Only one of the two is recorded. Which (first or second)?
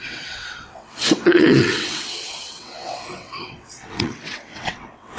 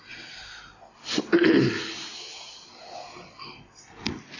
second